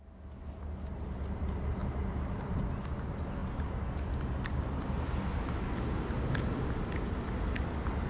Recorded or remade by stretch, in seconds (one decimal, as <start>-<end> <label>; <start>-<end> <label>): 0.0-8.1 recorded